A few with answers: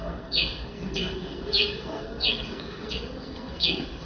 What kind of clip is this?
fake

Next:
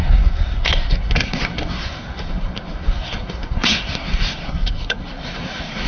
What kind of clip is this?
fake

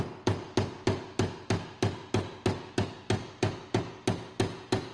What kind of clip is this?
real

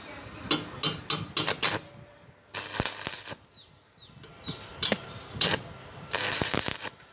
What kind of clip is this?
real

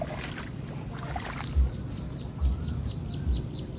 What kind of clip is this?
real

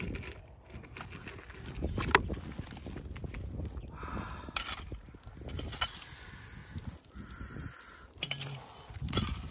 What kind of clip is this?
real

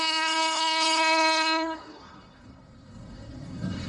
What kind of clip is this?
fake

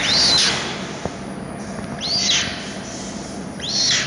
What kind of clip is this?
real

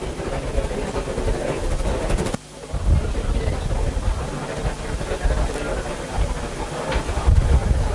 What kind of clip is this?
real